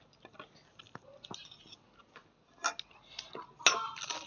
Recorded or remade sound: recorded